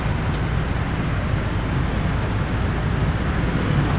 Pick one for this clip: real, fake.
real